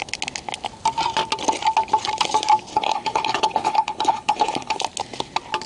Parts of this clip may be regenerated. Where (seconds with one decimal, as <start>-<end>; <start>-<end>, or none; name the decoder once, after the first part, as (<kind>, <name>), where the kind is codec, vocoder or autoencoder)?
2.7-4.8 (codec, HILCodec)